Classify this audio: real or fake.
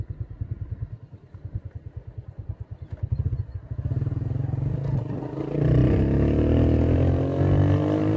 real